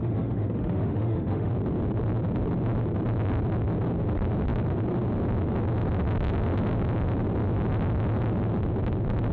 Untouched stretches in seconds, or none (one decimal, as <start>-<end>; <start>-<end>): 1.5-9.3